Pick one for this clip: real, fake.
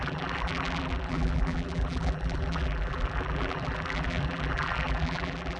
fake